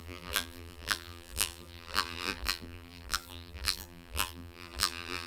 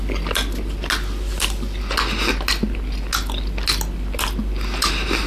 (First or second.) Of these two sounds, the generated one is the first